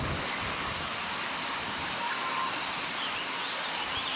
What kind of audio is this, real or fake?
real